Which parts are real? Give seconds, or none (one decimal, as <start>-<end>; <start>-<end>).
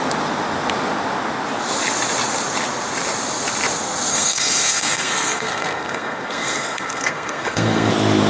0.0-4.1; 7.9-8.3